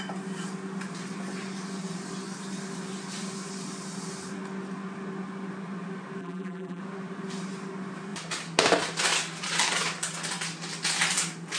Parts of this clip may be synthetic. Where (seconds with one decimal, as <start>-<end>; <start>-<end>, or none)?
6.2-6.8